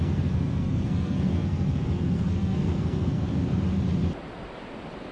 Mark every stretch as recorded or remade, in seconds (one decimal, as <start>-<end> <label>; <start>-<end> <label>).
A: 0.0-3.6 remade; 3.6-5.1 recorded